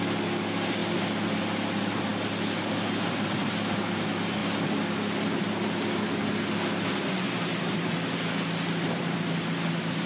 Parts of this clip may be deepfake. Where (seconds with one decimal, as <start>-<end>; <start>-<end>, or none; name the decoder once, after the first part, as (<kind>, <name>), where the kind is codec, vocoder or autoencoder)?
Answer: none